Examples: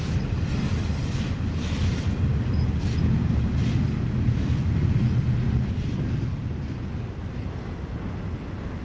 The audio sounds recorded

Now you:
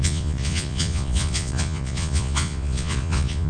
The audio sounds remade